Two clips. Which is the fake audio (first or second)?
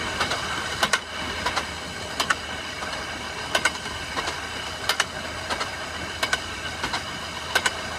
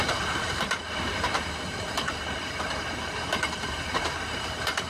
second